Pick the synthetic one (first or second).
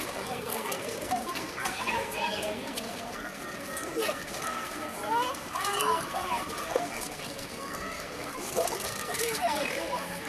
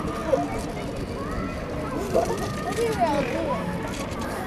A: first